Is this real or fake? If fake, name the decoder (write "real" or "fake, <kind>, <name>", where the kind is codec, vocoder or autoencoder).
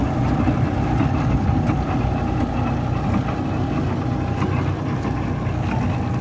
real